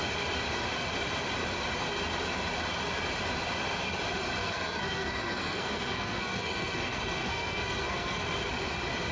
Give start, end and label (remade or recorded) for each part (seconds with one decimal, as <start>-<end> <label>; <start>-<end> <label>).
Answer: 0.0-4.4 recorded; 4.4-8.2 remade; 8.2-9.1 recorded